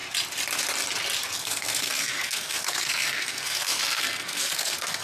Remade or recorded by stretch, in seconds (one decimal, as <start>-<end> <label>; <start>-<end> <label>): 0.0-1.4 recorded; 1.4-5.0 remade